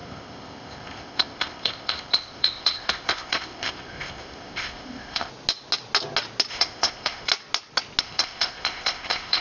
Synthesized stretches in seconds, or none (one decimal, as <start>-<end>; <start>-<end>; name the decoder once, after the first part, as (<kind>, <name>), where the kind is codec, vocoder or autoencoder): 0.0-5.3 (codec, ZipCodec); 6.5-7.3; 8.0-9.4